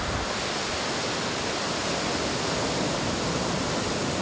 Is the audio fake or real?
real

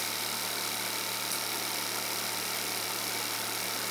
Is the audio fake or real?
real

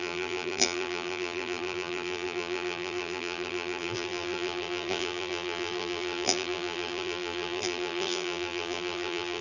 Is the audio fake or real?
fake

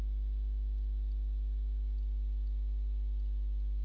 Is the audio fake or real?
real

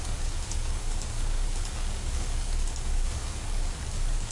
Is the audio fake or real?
fake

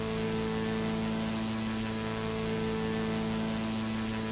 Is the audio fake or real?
real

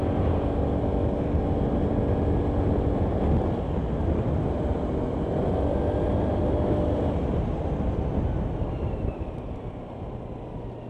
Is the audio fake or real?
real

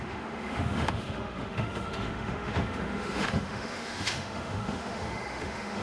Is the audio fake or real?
fake